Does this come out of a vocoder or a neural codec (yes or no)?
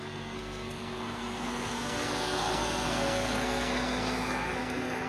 yes